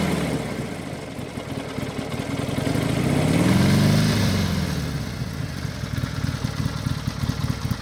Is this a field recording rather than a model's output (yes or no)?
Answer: yes